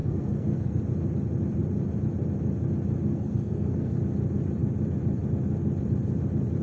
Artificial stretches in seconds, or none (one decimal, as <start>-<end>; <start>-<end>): 0.0-0.8; 3.1-3.9